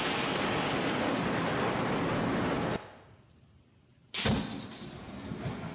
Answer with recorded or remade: recorded